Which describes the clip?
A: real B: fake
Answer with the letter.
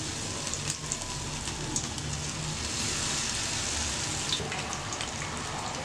A